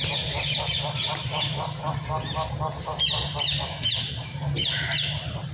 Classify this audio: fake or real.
fake